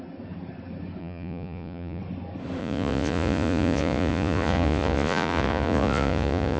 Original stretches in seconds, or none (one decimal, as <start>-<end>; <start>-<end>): 0.0-1.0; 2.0-2.6